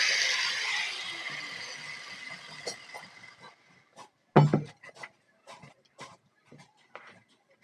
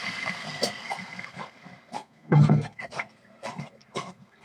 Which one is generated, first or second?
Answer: second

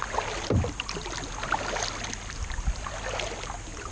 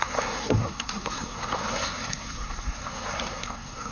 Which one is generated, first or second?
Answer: second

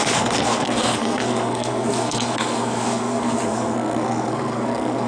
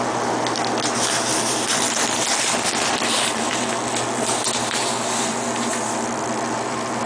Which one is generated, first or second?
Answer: first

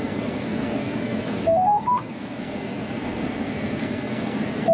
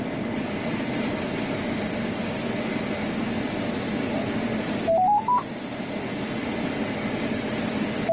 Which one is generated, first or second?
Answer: first